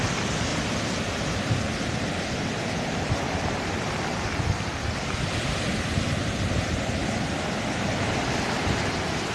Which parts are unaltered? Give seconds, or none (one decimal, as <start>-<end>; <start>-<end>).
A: 0.0-9.3